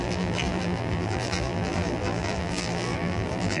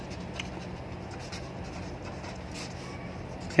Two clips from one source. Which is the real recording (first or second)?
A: second